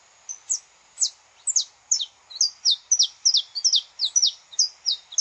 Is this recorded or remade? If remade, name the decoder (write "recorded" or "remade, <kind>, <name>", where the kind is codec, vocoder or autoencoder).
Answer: recorded